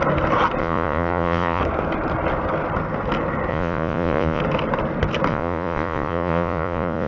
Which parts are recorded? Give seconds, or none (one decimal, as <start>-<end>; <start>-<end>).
0.0-0.6; 1.6-3.5; 4.4-5.3